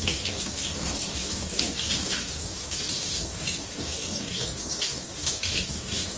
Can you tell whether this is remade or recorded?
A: remade